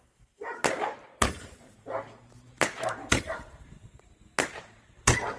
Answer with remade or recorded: recorded